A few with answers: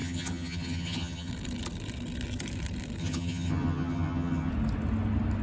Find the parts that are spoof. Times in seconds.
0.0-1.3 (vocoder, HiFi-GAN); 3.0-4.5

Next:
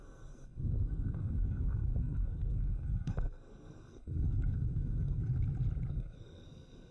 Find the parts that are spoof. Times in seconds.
0.0-5.2 (codec, SNAC); 5.9-6.9

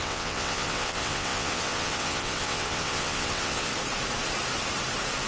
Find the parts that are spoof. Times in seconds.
0.0-3.7 (vocoder, WaveNeXt)

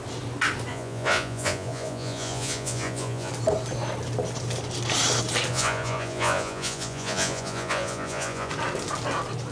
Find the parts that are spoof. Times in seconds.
0.7-3.3 (vocoder, Vocos); 5.5-8.5

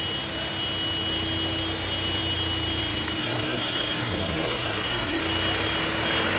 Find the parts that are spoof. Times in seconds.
3.2-5.2 (codec, SNAC)

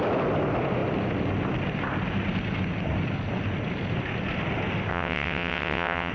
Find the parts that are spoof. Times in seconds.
4.9-6.1 (vocoder, WaveNeXt)

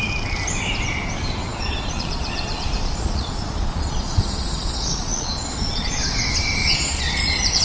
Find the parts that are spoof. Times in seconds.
1.4-6.0 (vocoder, Vocos); 6.6-7.6